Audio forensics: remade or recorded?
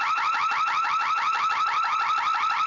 recorded